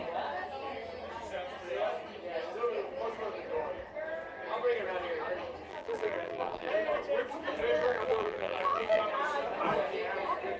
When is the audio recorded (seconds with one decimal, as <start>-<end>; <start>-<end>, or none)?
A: 0.0-5.7; 6.7-7.8; 9.0-10.6